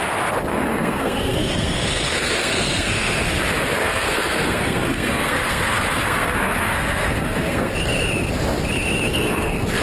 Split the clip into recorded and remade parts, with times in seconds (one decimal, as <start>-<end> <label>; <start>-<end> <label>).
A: 0.0-0.5 recorded; 0.5-3.3 remade; 3.3-3.8 recorded; 3.8-7.7 remade; 7.7-9.1 recorded; 9.1-9.8 remade